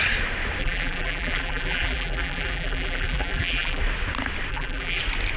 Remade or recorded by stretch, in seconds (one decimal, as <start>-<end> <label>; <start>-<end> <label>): 0.0-0.6 recorded; 0.6-3.8 remade; 3.8-4.5 recorded; 4.5-5.0 remade; 5.0-5.4 recorded